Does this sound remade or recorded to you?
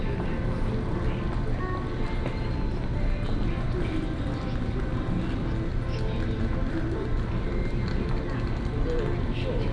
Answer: recorded